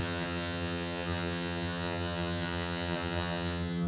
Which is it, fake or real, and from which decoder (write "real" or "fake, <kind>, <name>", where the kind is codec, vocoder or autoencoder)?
fake, vocoder, HiFi-GAN